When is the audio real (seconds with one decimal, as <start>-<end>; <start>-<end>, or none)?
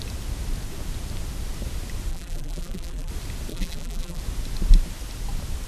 0.0-2.1; 3.1-3.5; 4.2-5.7